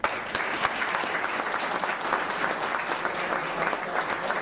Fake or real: real